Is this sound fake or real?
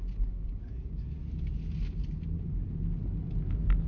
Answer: real